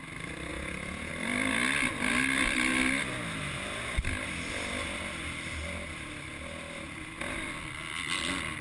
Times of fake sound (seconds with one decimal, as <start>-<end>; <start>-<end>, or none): 0.5-1.1

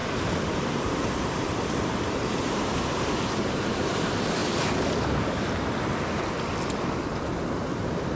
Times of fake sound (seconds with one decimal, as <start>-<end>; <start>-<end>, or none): 0.0-4.4

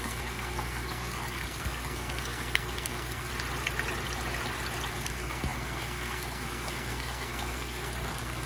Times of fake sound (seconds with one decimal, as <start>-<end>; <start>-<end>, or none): 0.0-3.3; 4.9-8.5

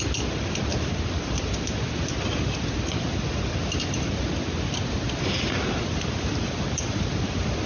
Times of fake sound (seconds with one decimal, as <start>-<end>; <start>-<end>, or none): none

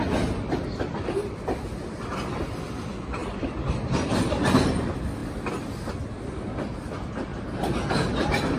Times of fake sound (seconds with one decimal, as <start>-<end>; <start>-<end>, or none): 0.0-5.2; 5.9-7.3; 7.9-8.6

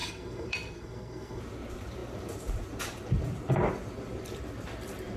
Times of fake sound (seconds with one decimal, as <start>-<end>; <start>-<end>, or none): 0.0-1.4

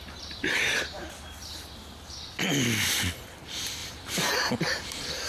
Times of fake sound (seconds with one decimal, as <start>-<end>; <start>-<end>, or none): 0.0-1.0; 3.4-5.3

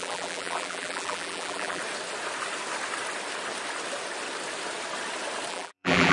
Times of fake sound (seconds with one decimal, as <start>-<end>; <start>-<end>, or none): 0.0-1.8; 5.5-6.1